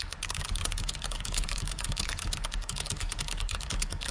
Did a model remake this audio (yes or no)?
yes